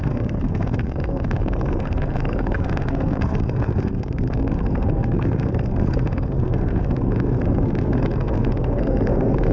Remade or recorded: remade